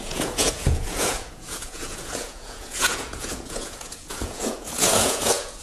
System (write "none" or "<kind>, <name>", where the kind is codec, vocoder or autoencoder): vocoder, Vocos